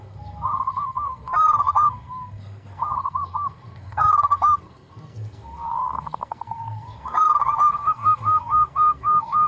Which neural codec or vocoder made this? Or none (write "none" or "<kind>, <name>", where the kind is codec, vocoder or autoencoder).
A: codec, SNAC